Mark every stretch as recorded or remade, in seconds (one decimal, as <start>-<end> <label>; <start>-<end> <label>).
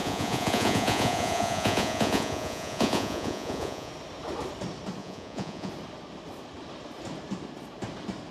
0.0-3.9 remade; 3.9-5.0 recorded; 5.0-5.7 remade; 5.7-8.3 recorded